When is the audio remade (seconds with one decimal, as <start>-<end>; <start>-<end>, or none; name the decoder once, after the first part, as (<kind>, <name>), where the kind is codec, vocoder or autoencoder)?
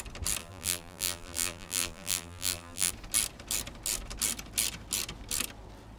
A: 0.4-2.9 (vocoder, BigVGAN v2)